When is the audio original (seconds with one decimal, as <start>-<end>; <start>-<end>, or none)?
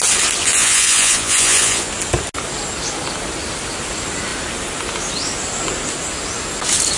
0.0-0.4; 1.9-7.0